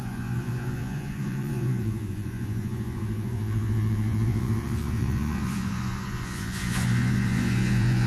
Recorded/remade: remade